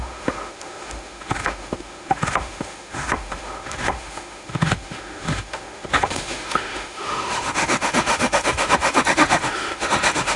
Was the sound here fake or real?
fake